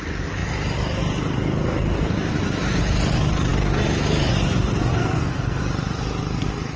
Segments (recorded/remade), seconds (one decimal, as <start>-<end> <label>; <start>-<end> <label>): 0.0-4.9 recorded; 4.9-5.6 remade; 5.6-6.8 recorded